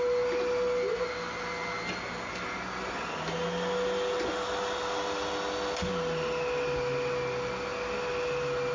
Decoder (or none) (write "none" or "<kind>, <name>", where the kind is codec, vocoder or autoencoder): none